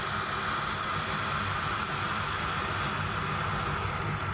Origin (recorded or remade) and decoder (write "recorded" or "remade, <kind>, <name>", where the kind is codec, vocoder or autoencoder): recorded